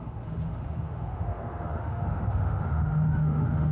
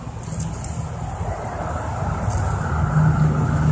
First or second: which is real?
second